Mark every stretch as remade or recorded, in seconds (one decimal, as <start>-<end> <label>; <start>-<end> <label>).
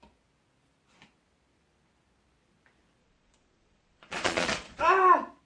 0.0-3.0 recorded; 3.0-4.8 remade; 4.8-5.5 recorded